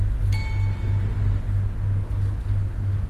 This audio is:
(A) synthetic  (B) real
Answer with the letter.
B